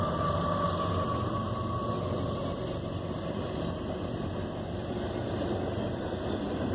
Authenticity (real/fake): real